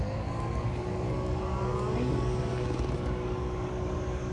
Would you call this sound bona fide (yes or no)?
no